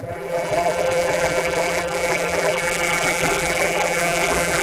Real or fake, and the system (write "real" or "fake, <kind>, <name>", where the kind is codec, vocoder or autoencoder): fake, vocoder, BigVGAN v2